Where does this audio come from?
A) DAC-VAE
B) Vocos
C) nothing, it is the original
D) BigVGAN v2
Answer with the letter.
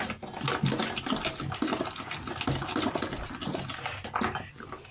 C